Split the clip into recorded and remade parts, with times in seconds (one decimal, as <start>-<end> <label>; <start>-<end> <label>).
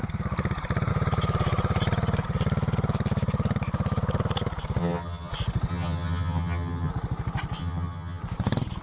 0.0-4.8 recorded; 4.8-5.3 remade; 5.3-5.7 recorded; 5.7-6.9 remade; 6.9-7.6 recorded; 7.6-8.2 remade; 8.2-8.8 recorded